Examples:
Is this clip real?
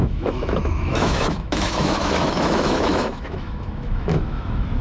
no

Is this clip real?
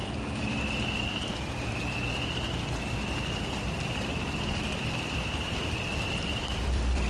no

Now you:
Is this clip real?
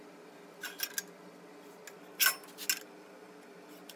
yes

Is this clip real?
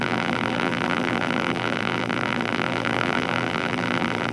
no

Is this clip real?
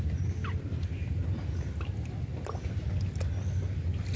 yes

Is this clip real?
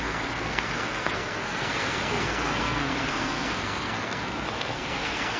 no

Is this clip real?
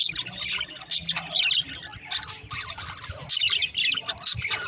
yes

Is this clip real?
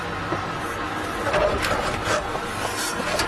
yes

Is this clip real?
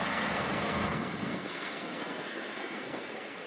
no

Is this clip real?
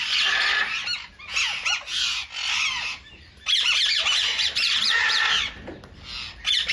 yes